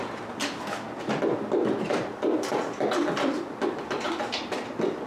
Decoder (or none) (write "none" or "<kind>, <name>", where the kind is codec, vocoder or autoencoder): none